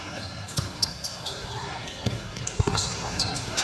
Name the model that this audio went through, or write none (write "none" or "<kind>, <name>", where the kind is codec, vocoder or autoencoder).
codec, SNAC